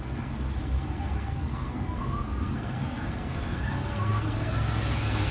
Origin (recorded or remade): remade